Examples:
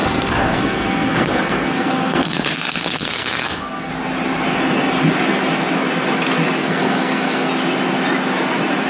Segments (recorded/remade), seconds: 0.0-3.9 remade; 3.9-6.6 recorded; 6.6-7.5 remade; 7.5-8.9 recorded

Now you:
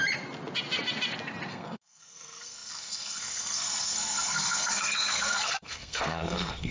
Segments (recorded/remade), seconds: 0.0-1.5 recorded; 1.5-6.7 remade

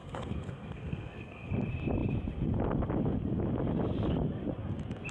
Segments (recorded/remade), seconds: 0.0-1.5 remade; 1.5-5.1 recorded

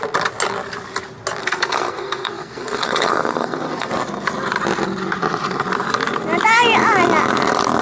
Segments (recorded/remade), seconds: 0.0-1.4 recorded; 1.4-3.9 remade; 3.9-7.8 recorded

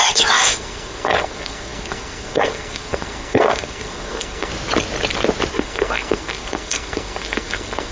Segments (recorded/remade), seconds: 0.0-4.5 remade; 4.5-5.5 recorded; 5.5-7.9 remade

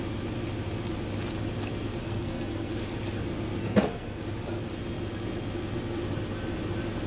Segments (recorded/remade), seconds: 0.0-2.0 recorded; 2.0-2.7 remade; 2.7-3.6 recorded; 3.6-4.2 remade; 4.2-7.1 recorded

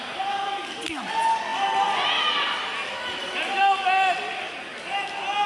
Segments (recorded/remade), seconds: 0.0-5.5 recorded